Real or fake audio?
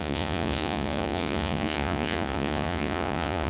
fake